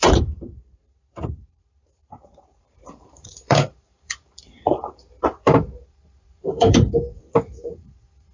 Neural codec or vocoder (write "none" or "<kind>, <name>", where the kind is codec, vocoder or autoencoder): vocoder, BigVGAN v2